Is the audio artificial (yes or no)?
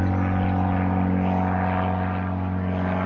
no